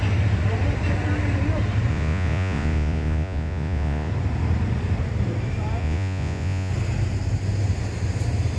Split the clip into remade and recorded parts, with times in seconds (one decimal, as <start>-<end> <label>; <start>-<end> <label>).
0.0-1.9 recorded; 1.9-4.1 remade; 4.1-5.8 recorded; 5.8-6.7 remade; 6.7-8.6 recorded

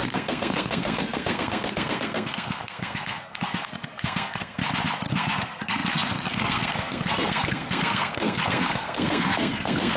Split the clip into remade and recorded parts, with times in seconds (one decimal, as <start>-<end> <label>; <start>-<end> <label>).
0.0-4.6 remade; 4.6-5.1 recorded; 5.1-10.0 remade

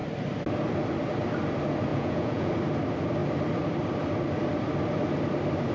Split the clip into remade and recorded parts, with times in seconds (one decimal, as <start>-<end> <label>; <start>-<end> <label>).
0.0-1.9 recorded; 1.9-2.5 remade; 2.5-5.7 recorded

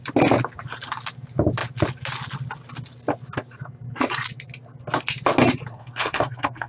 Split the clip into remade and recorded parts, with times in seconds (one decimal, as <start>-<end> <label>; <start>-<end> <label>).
0.0-5.7 recorded; 5.7-6.7 remade

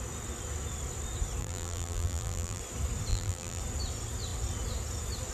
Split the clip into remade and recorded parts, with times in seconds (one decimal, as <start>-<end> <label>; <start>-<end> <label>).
0.0-1.4 recorded; 1.4-2.6 remade; 2.6-3.1 recorded; 3.1-3.6 remade; 3.6-5.3 recorded